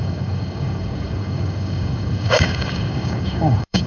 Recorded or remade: remade